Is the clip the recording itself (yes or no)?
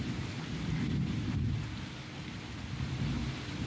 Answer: yes